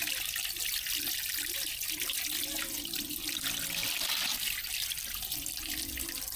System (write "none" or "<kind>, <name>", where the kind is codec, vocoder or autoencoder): none